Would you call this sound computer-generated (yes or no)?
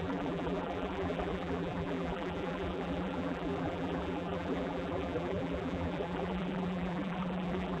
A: yes